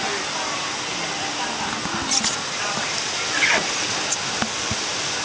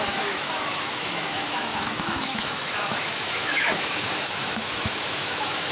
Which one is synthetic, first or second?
second